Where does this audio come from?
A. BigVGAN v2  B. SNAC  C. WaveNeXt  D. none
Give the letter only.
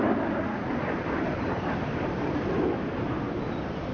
D